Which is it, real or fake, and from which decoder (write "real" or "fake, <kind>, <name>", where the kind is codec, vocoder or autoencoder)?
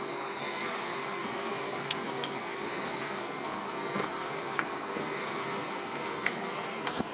fake, codec, SNAC